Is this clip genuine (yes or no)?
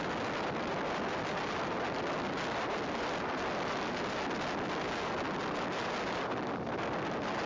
yes